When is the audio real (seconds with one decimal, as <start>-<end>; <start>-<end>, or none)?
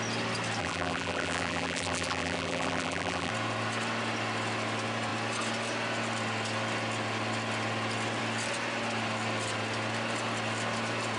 0.0-0.6; 3.3-11.2